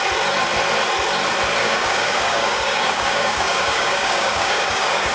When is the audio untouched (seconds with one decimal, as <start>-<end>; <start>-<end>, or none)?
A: 0.0-1.6